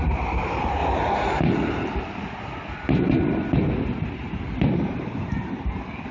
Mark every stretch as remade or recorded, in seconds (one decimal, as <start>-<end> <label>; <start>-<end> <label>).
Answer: 0.0-6.1 recorded